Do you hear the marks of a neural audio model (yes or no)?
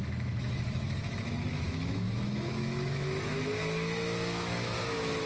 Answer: yes